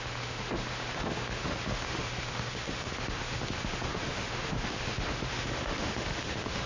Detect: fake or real fake